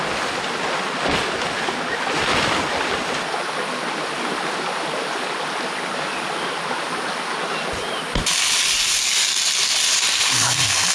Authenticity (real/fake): real